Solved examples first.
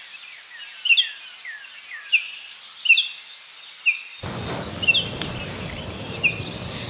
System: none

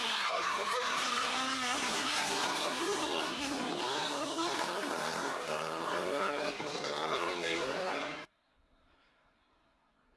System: codec, SNAC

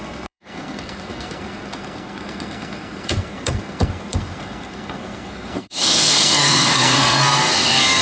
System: codec, SNAC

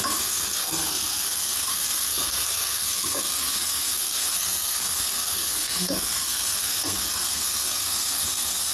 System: codec, SNAC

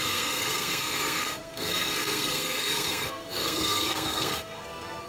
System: codec, SNAC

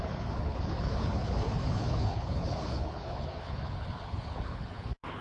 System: codec, HILCodec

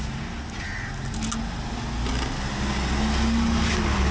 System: none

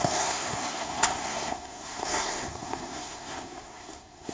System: codec, SNAC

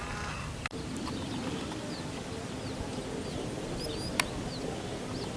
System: none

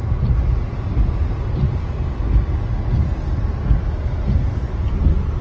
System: none